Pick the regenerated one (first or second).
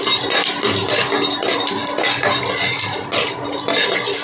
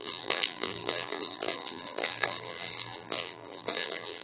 second